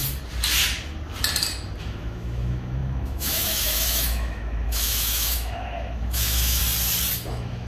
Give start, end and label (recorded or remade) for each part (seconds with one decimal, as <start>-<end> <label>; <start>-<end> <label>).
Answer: 0.0-1.8 recorded; 1.8-6.6 remade; 6.6-7.3 recorded; 7.3-7.7 remade